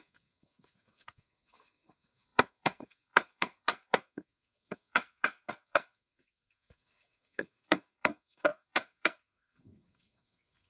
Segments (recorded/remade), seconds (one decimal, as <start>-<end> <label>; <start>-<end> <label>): 0.0-10.7 remade